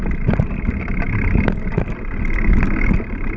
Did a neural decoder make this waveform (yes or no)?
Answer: no